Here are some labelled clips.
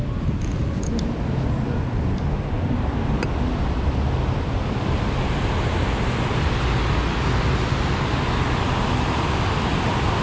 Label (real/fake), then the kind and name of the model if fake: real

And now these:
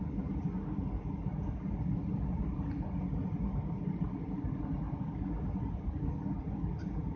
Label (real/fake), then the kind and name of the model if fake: real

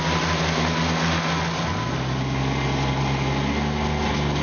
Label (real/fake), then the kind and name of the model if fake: real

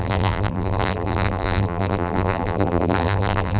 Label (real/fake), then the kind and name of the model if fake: fake, vocoder, BigVGAN v2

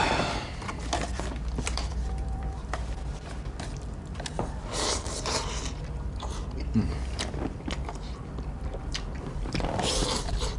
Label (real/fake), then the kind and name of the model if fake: fake, vocoder, BigVGAN v2